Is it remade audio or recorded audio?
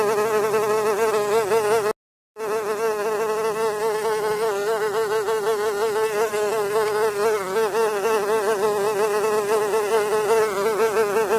recorded